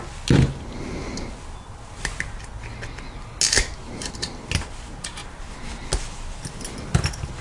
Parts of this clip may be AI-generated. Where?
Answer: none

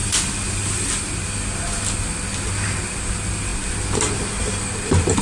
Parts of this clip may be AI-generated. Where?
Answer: 0.0-3.5; 4.5-5.2

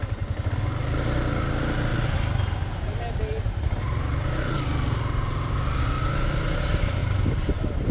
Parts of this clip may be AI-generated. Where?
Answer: none